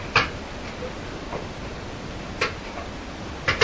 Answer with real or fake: real